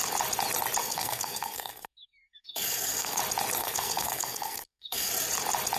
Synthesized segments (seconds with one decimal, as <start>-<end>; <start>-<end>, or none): 0.8-3.2; 3.6-5.1